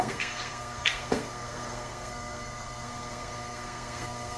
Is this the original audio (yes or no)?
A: no